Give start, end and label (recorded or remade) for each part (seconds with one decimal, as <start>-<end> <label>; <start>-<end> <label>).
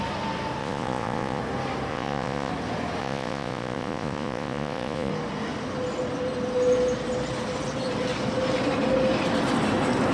0.0-0.6 recorded; 0.6-1.4 remade; 1.4-1.9 recorded; 1.9-2.5 remade; 2.5-3.0 recorded; 3.0-5.1 remade; 5.1-10.1 recorded